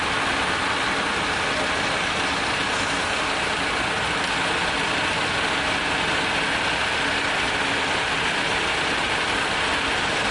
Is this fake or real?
real